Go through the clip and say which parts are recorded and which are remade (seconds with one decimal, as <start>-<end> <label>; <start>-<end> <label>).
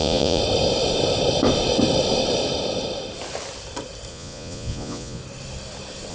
0.0-0.4 remade; 0.4-4.1 recorded; 4.1-5.2 remade; 5.2-6.1 recorded